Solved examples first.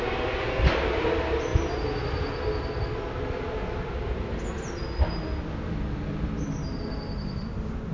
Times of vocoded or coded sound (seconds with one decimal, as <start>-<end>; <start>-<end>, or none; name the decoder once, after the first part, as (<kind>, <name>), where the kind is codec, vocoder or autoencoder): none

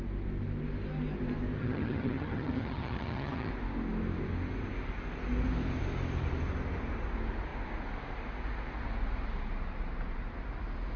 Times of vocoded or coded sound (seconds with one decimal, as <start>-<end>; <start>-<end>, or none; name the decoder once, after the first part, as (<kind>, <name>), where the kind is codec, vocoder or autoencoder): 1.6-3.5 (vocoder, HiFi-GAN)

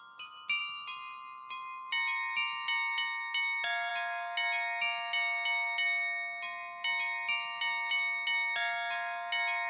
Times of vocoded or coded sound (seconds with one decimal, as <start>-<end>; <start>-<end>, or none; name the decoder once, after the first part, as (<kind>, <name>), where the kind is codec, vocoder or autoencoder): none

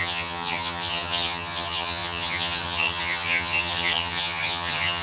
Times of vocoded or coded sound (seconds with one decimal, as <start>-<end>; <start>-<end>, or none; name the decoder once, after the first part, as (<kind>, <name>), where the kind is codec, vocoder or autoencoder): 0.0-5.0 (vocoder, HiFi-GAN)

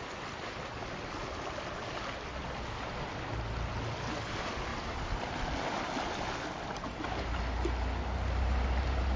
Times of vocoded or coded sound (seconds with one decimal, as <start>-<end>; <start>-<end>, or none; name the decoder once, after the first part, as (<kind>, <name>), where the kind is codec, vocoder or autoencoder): none

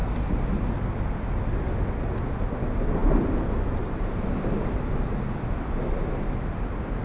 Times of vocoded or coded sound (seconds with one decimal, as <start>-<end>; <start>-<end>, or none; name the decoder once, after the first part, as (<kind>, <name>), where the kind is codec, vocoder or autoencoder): none

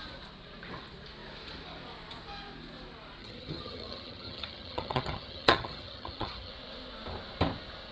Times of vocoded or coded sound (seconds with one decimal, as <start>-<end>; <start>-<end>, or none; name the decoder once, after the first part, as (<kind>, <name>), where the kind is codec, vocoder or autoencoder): 3.2-6.5 (vocoder, HiFi-GAN)